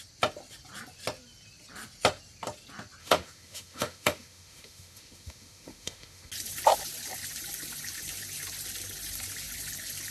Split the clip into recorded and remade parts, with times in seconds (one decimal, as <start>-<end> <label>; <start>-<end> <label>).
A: 0.0-3.0 recorded; 3.0-6.3 remade; 6.3-10.1 recorded